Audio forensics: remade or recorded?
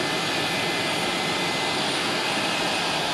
recorded